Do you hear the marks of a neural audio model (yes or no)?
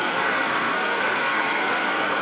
yes